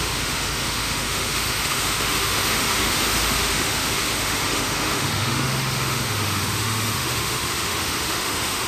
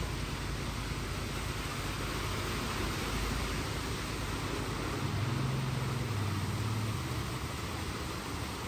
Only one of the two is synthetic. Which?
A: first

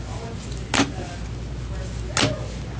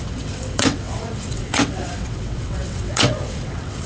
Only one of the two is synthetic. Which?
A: second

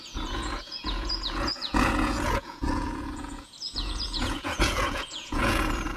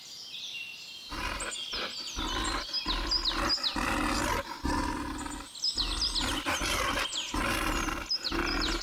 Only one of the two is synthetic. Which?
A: first